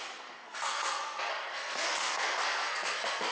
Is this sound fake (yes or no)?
yes